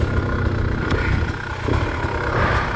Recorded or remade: recorded